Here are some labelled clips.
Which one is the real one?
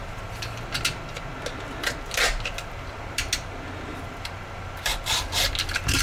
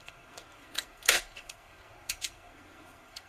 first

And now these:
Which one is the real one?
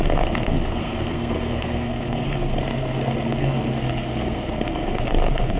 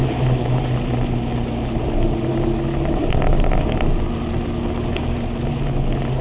second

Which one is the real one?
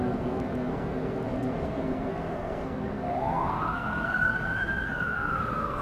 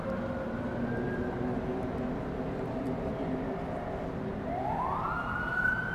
second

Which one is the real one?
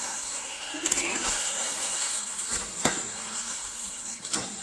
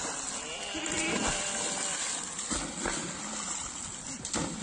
second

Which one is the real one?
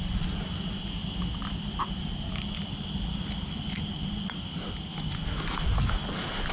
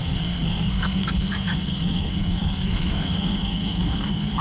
first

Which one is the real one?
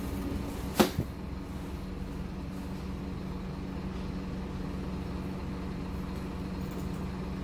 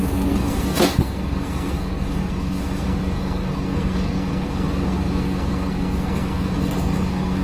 first